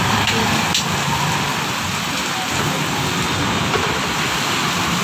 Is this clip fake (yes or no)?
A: no